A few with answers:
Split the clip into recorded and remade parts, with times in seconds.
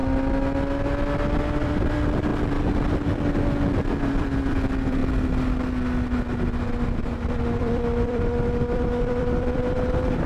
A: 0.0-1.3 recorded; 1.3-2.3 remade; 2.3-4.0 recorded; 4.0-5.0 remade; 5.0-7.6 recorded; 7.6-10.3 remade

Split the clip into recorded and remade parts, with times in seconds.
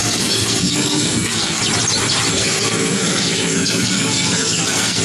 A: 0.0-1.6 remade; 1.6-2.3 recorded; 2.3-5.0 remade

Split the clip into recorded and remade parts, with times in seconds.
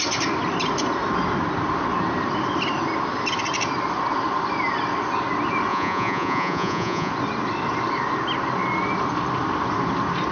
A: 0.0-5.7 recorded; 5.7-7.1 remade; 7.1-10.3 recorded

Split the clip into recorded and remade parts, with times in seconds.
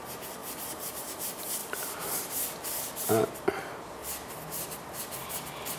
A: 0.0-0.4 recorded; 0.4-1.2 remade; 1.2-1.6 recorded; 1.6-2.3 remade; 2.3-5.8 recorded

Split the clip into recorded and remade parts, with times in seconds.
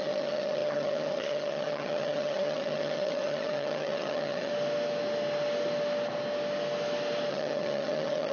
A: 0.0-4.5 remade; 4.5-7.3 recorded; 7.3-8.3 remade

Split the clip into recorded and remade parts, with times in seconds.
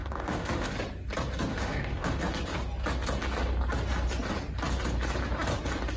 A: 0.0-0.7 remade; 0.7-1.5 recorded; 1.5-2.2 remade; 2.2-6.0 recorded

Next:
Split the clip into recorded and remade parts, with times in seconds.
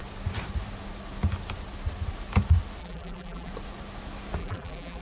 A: 0.0-2.8 recorded; 2.8-3.5 remade; 3.5-4.4 recorded; 4.4-5.0 remade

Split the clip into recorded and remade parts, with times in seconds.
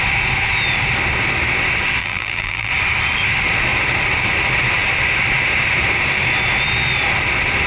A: 0.0-2.0 recorded; 2.0-2.7 remade; 2.7-7.7 recorded